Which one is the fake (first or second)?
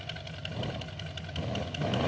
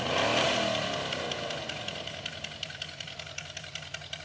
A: first